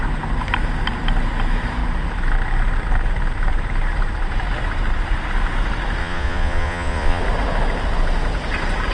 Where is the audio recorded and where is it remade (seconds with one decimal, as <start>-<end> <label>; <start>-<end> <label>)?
0.0-6.0 recorded; 6.0-7.2 remade; 7.2-8.9 recorded